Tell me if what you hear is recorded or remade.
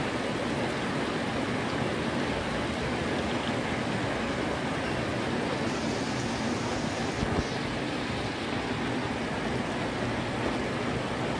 recorded